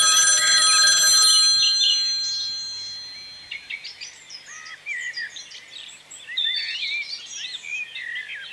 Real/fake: real